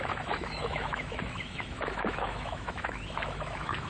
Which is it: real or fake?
fake